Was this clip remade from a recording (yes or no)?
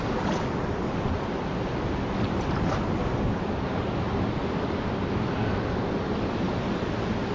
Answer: no